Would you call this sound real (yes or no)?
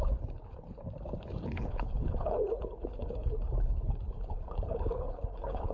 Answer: no